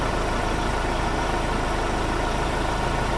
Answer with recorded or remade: remade